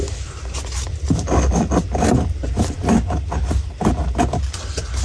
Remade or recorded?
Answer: recorded